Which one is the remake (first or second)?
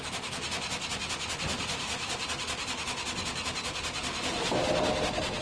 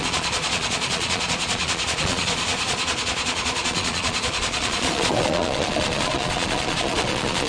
second